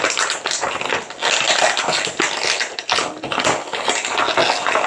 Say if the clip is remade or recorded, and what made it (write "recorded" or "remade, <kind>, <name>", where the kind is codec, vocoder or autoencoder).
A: recorded